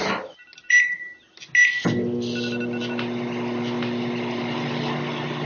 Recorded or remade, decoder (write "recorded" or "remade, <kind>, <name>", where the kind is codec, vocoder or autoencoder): recorded